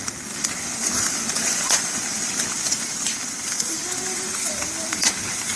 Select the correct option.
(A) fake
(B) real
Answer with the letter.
A